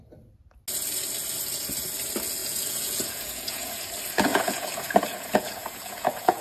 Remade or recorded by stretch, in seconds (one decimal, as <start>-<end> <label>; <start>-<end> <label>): 0.0-2.4 recorded; 2.4-3.8 remade; 3.8-4.3 recorded; 4.3-6.4 remade